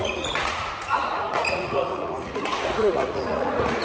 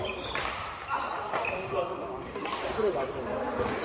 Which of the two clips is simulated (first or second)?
first